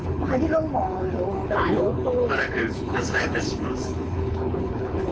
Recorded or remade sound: remade